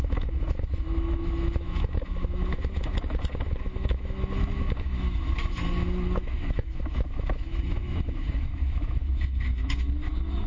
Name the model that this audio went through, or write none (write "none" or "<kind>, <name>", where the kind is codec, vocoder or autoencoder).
autoencoder, DAC-VAE